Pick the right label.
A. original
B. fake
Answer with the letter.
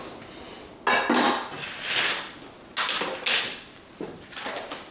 A